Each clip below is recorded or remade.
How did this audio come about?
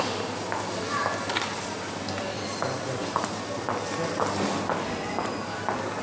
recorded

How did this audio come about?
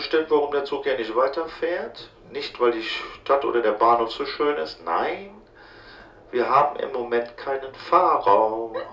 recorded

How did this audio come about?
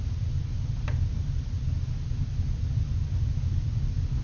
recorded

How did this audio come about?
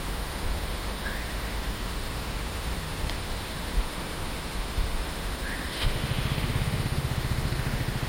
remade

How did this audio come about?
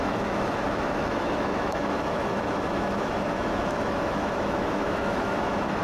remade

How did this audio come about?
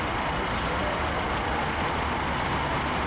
recorded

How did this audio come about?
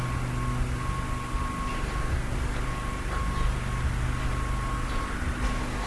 recorded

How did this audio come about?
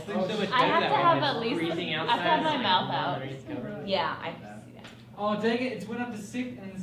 recorded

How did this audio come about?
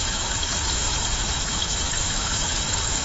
remade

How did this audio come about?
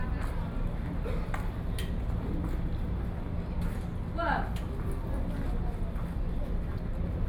recorded